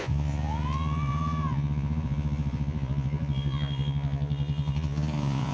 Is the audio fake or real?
fake